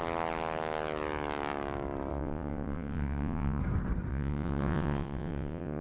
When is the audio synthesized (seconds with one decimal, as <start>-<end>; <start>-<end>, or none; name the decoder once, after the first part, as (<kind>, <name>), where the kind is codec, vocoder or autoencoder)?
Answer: 2.1-3.6 (vocoder, WaveNeXt); 4.1-5.8